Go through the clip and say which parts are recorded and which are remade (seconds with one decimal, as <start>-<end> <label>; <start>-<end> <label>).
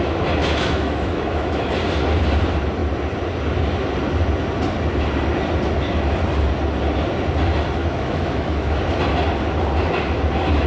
0.0-0.4 recorded; 0.4-1.7 remade; 1.7-7.8 recorded; 7.8-8.8 remade; 8.8-10.7 recorded